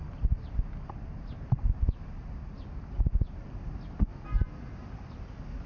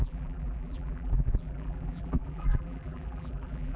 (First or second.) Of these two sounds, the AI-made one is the second